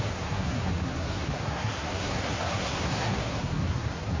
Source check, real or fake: fake